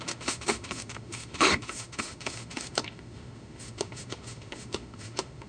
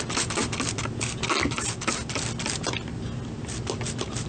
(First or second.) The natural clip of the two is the second